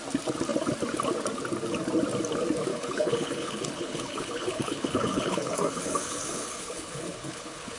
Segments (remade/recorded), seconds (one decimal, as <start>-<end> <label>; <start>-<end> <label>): 0.0-2.7 recorded; 2.7-7.8 remade